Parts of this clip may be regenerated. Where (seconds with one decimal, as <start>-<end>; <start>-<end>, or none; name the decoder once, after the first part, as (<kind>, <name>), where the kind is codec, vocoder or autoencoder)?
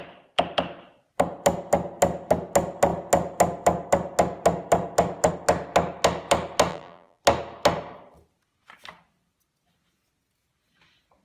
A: 6.7-7.2 (vocoder, BigVGAN v2)